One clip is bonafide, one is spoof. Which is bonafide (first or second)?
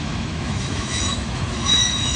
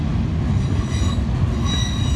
second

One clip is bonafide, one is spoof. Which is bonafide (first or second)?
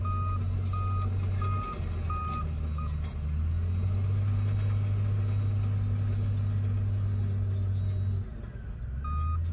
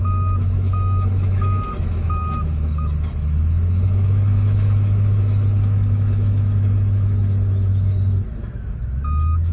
first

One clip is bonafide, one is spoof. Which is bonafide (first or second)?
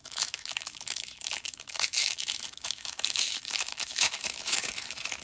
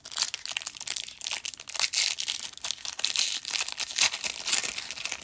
second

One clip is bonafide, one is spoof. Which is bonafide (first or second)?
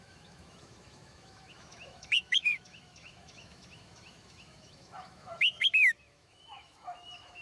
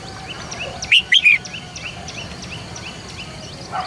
second